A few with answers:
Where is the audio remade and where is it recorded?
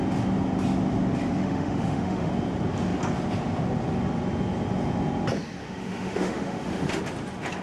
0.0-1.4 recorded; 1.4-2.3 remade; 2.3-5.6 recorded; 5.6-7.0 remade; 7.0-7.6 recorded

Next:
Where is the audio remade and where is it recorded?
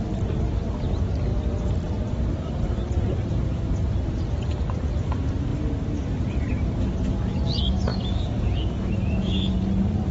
0.0-7.9 recorded; 7.9-9.6 remade; 9.6-10.1 recorded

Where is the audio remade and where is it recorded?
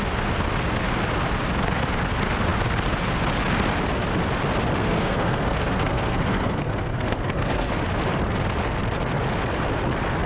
0.0-4.8 recorded; 4.8-7.7 remade; 7.7-10.3 recorded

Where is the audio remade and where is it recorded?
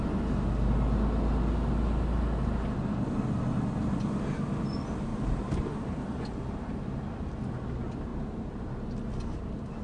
0.0-5.1 recorded; 5.1-6.2 remade; 6.2-8.1 recorded; 8.1-8.7 remade; 8.7-9.8 recorded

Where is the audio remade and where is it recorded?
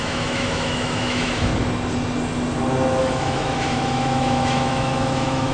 0.0-1.5 remade; 1.5-3.0 recorded; 3.0-5.5 remade